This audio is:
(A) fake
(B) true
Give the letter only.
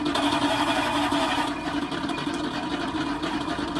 B